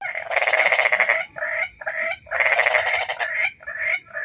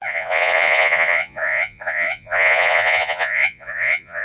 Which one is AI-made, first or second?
second